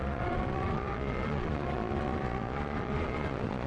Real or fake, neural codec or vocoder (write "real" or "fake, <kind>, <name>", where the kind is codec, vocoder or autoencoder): fake, vocoder, Vocos